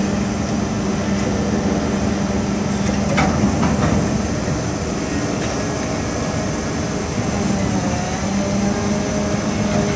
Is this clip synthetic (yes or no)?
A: no